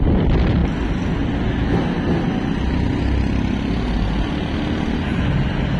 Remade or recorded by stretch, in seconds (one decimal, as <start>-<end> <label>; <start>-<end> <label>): 0.0-5.8 recorded